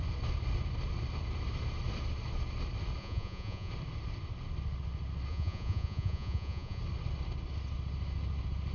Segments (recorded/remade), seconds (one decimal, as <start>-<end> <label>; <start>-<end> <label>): 0.0-3.0 recorded; 3.0-3.7 remade; 3.7-5.3 recorded; 5.3-6.8 remade; 6.8-8.7 recorded